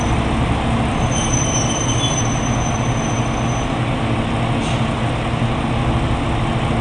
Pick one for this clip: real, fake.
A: real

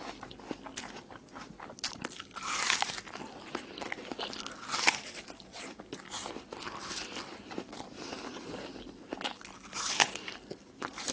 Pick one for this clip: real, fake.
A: real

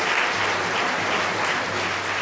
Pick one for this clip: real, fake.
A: real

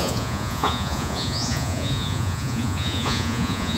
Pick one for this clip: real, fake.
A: fake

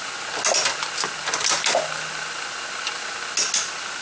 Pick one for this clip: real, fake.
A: real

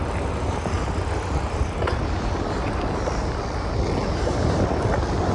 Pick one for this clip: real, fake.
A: real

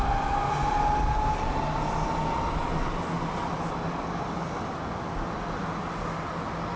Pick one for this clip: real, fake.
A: real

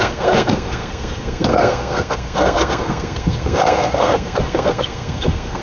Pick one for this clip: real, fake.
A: fake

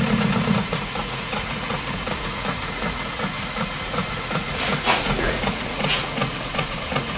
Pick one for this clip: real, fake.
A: fake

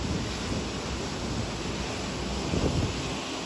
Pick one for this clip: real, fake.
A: real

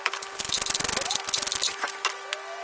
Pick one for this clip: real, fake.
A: real